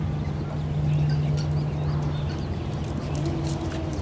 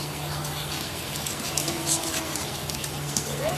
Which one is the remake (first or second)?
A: second